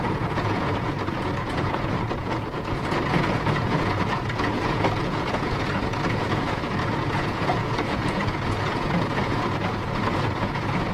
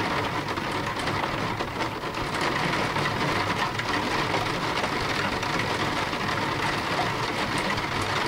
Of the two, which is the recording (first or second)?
second